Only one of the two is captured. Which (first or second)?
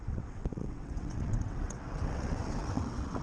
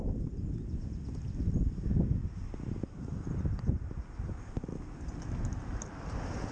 second